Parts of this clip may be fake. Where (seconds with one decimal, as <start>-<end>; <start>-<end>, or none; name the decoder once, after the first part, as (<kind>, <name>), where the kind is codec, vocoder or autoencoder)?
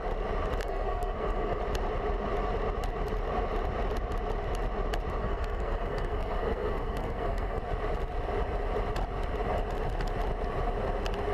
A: 0.6-1.6 (codec, SNAC); 5.2-7.6